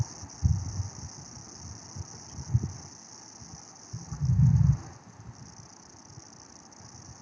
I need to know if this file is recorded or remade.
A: recorded